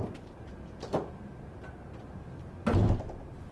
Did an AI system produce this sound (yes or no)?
no